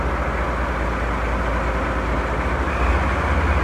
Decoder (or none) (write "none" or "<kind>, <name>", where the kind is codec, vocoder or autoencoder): none